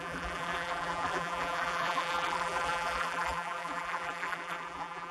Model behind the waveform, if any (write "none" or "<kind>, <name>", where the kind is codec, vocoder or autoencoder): vocoder, BigVGAN v2